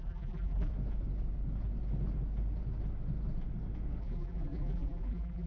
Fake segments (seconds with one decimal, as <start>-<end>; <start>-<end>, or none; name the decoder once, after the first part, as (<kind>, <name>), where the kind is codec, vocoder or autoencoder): 0.0-0.7 (vocoder, BigVGAN v2); 4.0-5.5